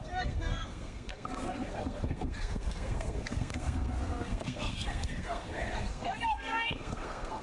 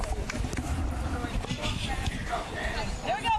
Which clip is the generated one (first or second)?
first